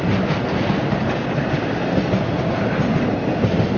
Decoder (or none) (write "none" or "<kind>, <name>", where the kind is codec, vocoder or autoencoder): none